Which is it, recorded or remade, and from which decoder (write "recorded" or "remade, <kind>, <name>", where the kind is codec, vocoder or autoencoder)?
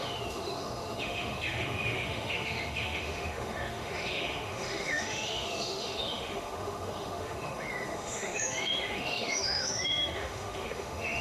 remade, autoencoder, DAC-VAE